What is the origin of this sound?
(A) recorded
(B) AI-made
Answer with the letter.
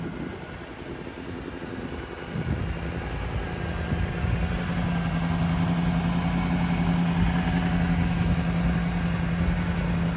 A